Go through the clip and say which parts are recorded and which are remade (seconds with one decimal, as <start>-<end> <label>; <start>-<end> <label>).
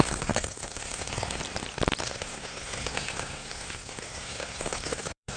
0.0-1.4 remade; 1.4-2.0 recorded; 2.0-5.4 remade